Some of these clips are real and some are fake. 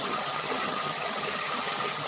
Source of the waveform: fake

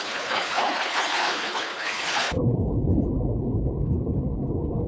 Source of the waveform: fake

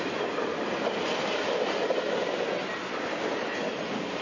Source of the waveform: real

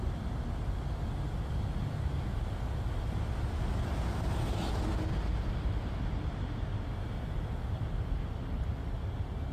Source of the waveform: real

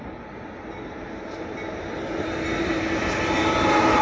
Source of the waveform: real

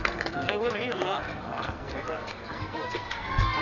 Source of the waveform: fake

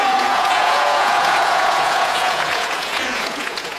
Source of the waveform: fake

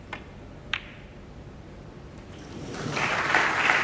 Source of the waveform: real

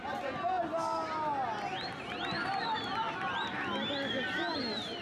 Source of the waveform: real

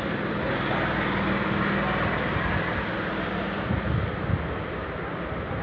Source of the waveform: real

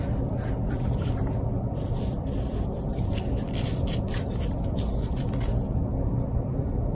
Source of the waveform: fake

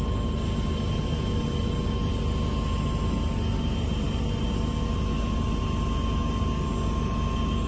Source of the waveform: real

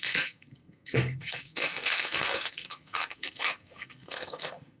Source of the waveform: fake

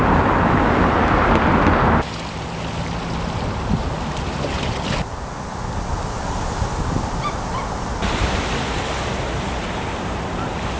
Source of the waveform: real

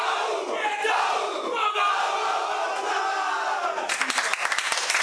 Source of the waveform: real